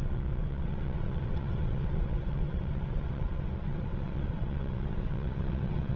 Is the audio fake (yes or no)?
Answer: yes